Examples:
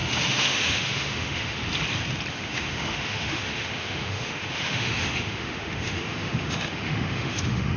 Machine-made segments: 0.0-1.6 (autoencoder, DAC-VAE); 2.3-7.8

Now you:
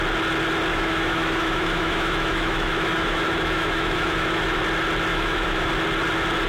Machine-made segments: 0.7-4.6 (autoencoder, DAC-VAE); 5.1-5.7

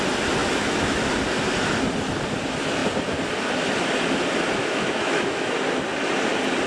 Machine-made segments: 0.4-1.1 (autoencoder, DAC-VAE); 4.6-5.5

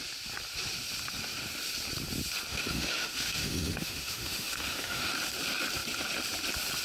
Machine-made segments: 2.5-5.1 (autoencoder, DAC-VAE)

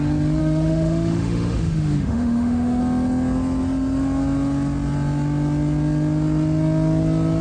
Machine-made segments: 0.4-2.8 (autoencoder, DAC-VAE)

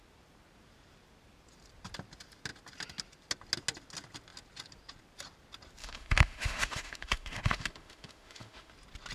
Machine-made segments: 5.8-8.7 (autoencoder, DAC-VAE)